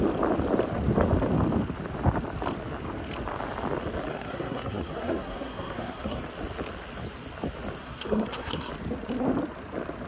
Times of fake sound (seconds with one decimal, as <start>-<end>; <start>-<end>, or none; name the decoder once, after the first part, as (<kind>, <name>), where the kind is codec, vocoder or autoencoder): 4.1-6.2 (codec, SNAC); 7.8-8.7